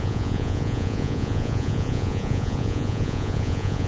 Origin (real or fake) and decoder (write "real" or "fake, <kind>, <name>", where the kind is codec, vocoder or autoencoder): fake, vocoder, Vocos